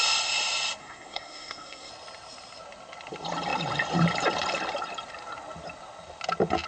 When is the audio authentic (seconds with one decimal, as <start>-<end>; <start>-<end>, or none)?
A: 0.0-0.8; 1.9-6.7